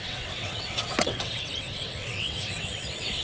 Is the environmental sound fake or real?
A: fake